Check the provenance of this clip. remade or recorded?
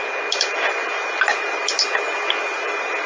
recorded